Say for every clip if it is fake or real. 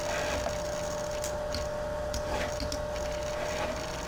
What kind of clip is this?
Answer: real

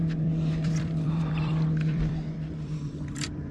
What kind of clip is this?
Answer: fake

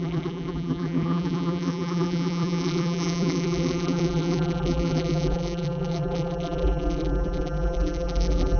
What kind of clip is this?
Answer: fake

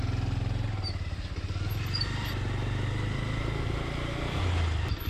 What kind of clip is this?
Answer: real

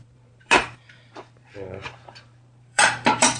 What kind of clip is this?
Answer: fake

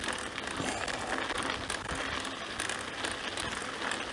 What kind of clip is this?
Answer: real